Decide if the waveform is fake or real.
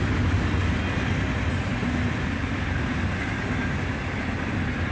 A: real